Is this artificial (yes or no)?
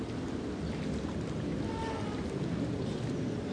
no